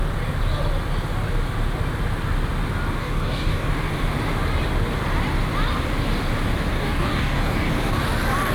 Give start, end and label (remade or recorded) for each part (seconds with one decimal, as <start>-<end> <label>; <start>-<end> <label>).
0.0-3.0 recorded; 3.0-3.7 remade; 3.7-6.7 recorded; 6.7-7.7 remade; 7.7-8.5 recorded